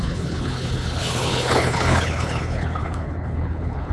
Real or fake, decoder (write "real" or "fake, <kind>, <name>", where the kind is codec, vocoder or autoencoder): fake, codec, HILCodec